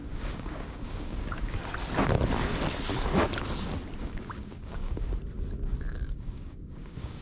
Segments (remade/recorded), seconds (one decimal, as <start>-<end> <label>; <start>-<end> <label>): 0.0-1.6 remade; 1.6-4.0 recorded; 4.0-5.1 remade; 5.1-5.9 recorded; 5.9-7.2 remade